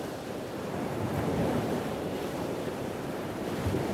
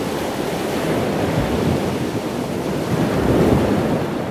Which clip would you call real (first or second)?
second